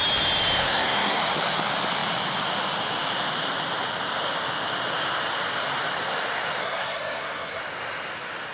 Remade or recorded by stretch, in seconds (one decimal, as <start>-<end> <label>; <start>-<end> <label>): 0.0-0.6 recorded; 0.6-1.2 remade; 1.2-6.6 recorded; 6.6-7.6 remade; 7.6-8.5 recorded